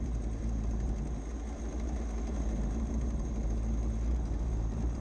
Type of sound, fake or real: fake